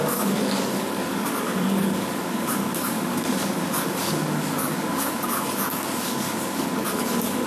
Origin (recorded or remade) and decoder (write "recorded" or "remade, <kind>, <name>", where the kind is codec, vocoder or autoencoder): remade, codec, DAC